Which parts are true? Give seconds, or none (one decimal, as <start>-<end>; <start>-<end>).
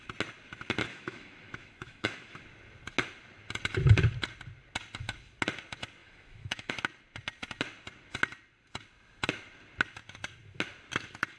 0.0-0.9; 2.4-6.0; 6.7-11.4